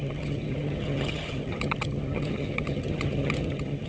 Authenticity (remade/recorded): remade